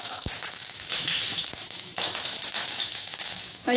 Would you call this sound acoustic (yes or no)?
no